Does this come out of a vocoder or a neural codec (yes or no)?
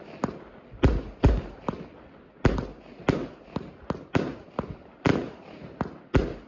no